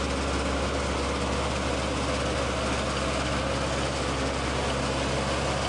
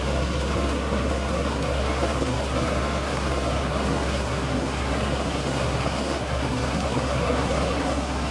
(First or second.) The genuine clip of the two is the first